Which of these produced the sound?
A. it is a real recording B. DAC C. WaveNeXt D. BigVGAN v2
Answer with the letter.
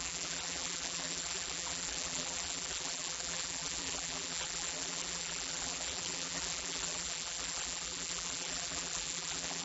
D